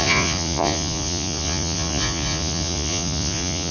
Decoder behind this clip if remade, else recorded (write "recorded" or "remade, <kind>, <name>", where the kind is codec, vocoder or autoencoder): remade, vocoder, Vocos